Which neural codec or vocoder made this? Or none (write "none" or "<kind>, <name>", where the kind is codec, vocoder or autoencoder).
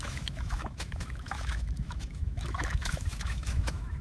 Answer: autoencoder, DAC-VAE